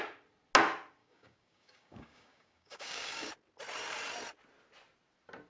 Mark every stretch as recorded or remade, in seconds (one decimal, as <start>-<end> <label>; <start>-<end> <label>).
0.0-1.0 recorded; 1.0-3.3 remade; 3.3-5.5 recorded